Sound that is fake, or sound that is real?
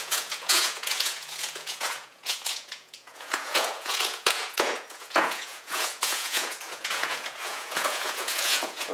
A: fake